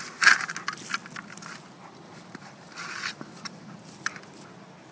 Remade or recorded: recorded